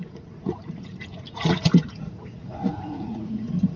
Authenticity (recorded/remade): remade